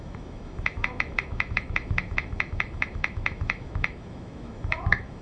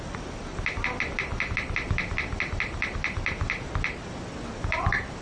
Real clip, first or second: second